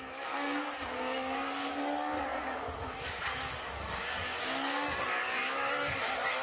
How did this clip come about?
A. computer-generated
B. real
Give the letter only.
A